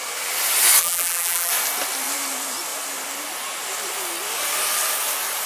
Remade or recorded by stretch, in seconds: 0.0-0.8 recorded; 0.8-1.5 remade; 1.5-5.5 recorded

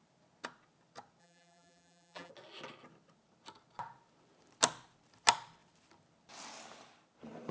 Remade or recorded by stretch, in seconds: 0.0-1.2 recorded; 1.2-2.3 remade; 2.3-7.5 recorded

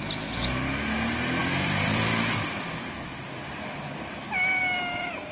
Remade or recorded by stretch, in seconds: 0.0-1.4 recorded; 1.4-4.6 remade; 4.6-5.3 recorded

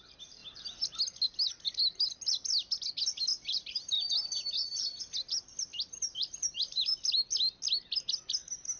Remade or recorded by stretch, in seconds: 0.0-3.3 recorded; 3.3-4.1 remade; 4.1-4.7 recorded; 4.7-6.9 remade; 6.9-8.8 recorded

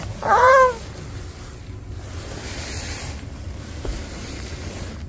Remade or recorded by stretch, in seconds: 0.0-0.5 remade; 0.5-3.0 recorded; 3.0-5.1 remade

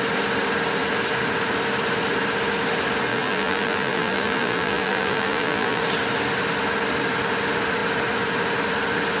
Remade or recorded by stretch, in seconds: 0.0-3.1 recorded; 3.1-5.8 remade; 5.8-9.2 recorded

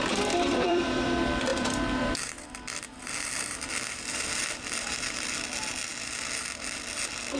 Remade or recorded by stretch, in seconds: 0.0-5.9 remade; 5.9-7.4 recorded